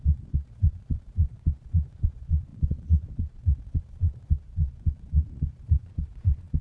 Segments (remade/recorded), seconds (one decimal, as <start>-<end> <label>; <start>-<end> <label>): 0.0-6.6 remade